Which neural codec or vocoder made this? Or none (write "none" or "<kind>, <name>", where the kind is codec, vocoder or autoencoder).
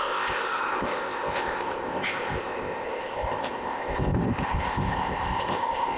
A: codec, ZipCodec